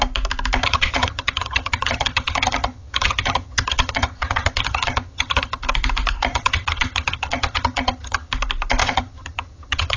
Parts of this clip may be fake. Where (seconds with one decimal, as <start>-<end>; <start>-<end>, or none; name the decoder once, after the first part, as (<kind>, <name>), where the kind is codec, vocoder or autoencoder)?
0.6-5.6 (vocoder, HiFi-GAN); 6.3-8.3; 8.8-10.0